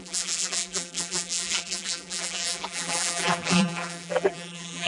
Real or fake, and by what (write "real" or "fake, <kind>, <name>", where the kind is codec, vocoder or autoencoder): fake, vocoder, BigVGAN v2